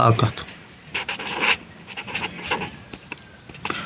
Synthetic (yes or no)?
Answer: yes